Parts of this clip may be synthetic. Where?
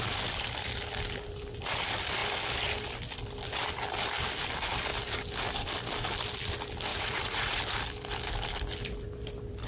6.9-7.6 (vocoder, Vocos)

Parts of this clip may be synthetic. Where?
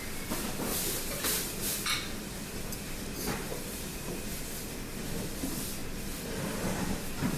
none